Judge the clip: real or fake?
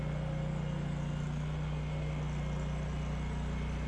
real